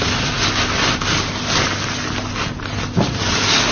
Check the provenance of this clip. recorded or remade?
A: recorded